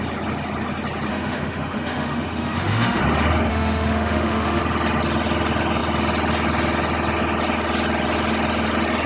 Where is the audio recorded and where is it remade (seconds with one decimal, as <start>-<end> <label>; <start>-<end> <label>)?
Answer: 0.0-1.1 recorded; 1.1-3.0 remade; 3.0-3.5 recorded; 3.5-4.6 remade; 4.6-9.1 recorded